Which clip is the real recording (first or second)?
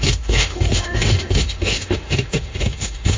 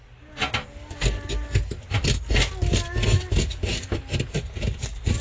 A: second